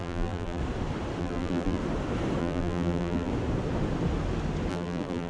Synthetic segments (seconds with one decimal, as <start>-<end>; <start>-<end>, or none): 0.0-0.6; 1.2-1.8; 2.4-3.3; 4.7-5.3